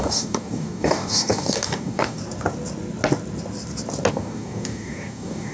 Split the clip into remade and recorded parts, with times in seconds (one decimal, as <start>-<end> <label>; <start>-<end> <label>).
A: 0.0-2.2 remade; 2.2-4.1 recorded; 4.1-5.5 remade